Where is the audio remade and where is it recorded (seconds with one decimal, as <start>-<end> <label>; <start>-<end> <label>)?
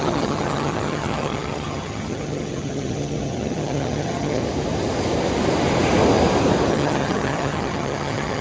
0.0-4.4 remade; 4.4-6.7 recorded; 6.7-8.4 remade